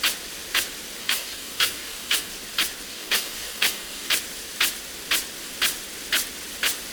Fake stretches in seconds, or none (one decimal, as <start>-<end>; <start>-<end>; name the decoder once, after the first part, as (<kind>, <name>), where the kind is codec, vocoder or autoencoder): 1.0-2.3 (codec, DAC); 2.9-4.1